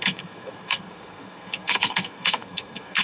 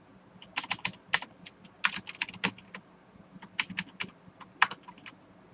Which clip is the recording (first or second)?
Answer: second